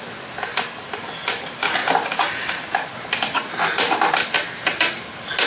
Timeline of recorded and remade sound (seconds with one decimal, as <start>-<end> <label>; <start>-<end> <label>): 0.0-5.5 recorded